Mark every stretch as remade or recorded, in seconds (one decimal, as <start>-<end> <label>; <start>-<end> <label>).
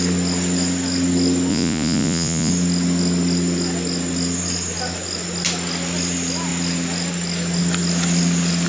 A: 0.0-1.5 recorded; 1.5-2.5 remade; 2.5-8.7 recorded